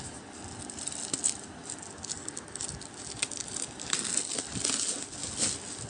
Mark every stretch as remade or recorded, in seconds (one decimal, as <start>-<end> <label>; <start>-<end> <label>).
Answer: 0.0-5.9 recorded